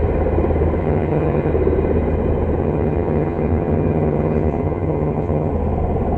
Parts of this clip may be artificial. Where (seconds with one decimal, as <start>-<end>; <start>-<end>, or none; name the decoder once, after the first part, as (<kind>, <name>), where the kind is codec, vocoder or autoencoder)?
0.8-1.5 (vocoder, HiFi-GAN); 2.6-5.5